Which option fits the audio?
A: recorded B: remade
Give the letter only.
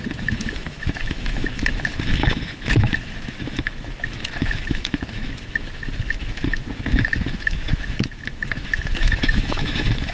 B